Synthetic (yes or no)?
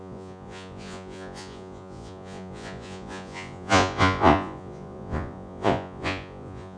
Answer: yes